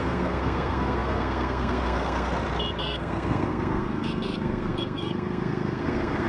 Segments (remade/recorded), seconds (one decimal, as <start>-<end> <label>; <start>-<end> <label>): 0.0-2.3 remade; 2.3-2.8 recorded; 2.8-6.3 remade